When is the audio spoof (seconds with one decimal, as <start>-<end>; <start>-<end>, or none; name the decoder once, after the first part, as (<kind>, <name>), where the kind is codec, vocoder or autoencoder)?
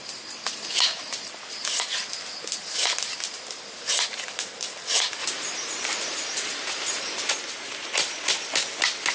5.2-7.3 (vocoder, BigVGAN v2)